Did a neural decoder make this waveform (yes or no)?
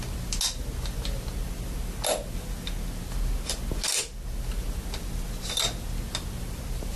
no